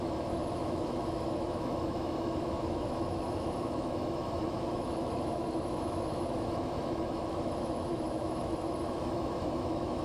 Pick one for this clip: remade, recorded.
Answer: remade